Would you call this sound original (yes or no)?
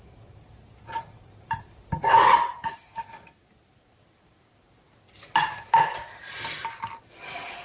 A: yes